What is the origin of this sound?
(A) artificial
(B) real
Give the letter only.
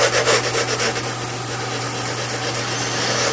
B